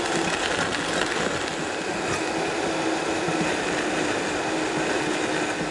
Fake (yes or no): no